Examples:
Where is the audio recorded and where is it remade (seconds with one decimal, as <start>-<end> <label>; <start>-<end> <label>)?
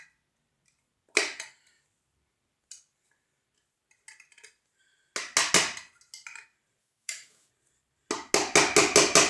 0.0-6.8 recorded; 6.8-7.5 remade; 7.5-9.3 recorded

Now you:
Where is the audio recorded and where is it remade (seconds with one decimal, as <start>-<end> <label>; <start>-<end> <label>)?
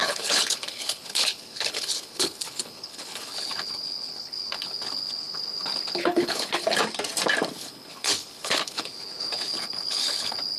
0.0-6.8 remade; 6.8-7.5 recorded; 7.5-10.6 remade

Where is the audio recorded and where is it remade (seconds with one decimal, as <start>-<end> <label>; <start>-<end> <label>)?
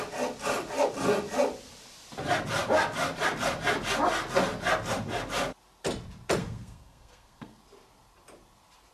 0.0-6.4 recorded; 6.4-7.6 remade; 7.6-8.9 recorded